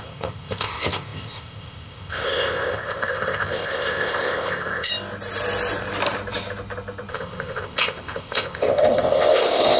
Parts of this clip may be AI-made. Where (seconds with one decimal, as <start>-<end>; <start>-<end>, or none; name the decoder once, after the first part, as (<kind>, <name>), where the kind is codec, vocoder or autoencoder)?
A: 0.0-4.9 (codec, ZipCodec); 7.1-9.8